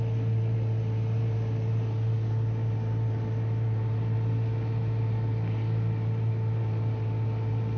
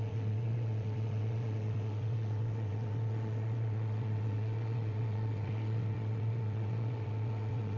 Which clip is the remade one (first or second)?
second